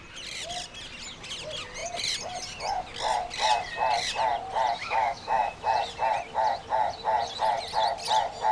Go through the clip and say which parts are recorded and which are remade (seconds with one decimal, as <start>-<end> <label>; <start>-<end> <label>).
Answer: 0.0-4.8 recorded; 4.8-5.7 remade; 5.7-8.5 recorded